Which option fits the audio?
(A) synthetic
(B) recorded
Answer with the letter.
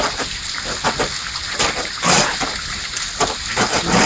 B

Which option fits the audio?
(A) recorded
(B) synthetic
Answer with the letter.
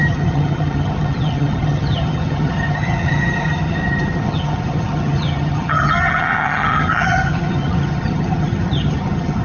B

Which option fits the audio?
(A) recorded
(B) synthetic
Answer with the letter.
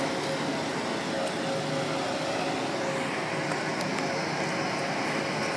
A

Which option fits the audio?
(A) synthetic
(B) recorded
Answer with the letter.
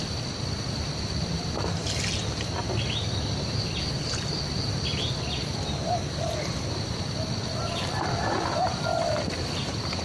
B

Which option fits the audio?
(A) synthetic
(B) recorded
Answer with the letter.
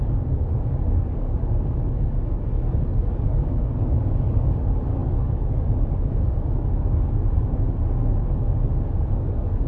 A